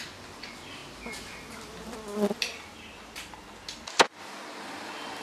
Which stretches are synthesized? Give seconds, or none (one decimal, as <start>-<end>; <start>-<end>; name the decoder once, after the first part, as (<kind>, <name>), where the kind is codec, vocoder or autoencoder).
none